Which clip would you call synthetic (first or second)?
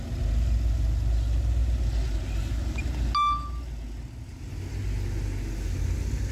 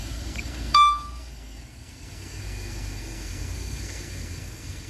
second